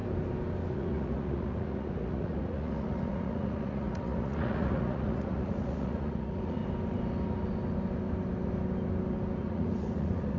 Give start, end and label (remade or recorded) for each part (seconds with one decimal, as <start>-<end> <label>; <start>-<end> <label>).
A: 0.0-0.7 recorded; 0.7-6.6 remade; 6.6-9.4 recorded; 9.4-10.4 remade